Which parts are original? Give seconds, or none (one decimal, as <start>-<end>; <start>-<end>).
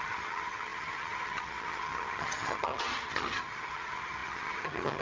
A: none